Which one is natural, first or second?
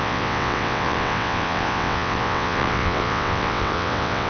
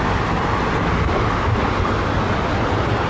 second